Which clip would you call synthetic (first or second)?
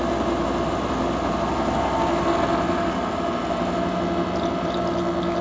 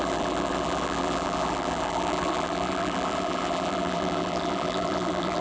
second